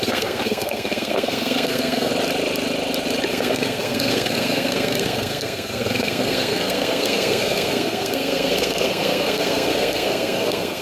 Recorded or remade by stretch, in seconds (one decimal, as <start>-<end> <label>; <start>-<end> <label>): 0.0-2.1 remade; 2.1-3.3 recorded; 3.3-10.8 remade